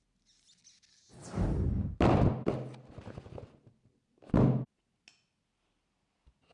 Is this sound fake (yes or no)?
no